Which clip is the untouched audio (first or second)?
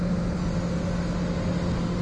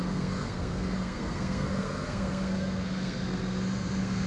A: first